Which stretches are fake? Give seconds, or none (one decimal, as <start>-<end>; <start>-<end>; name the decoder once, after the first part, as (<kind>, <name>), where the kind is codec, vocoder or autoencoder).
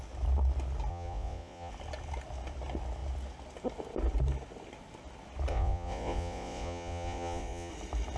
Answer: 0.9-1.7 (vocoder, Vocos); 5.5-7.7